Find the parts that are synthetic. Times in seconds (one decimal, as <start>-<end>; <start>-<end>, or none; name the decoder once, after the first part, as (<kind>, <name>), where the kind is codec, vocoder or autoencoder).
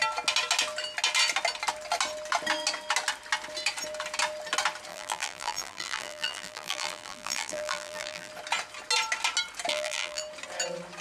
4.9-8.3 (vocoder, BigVGAN v2); 9.7-10.2